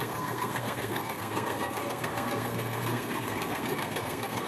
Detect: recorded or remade remade